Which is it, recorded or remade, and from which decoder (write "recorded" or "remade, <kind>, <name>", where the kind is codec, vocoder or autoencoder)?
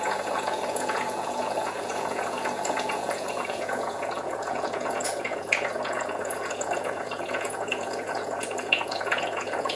remade, vocoder, Vocos